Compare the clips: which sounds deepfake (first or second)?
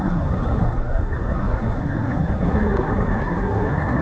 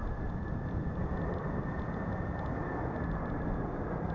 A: first